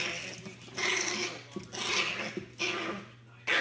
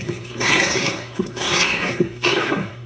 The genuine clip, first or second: first